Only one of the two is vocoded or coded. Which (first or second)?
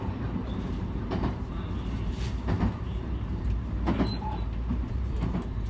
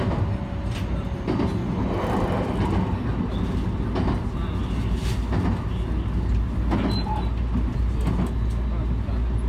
first